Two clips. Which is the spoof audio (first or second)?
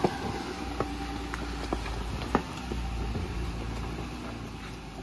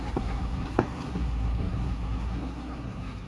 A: second